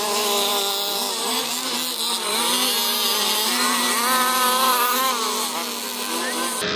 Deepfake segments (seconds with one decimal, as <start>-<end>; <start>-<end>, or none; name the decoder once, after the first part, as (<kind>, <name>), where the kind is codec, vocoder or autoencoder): none